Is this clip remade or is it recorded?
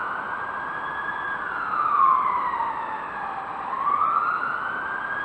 recorded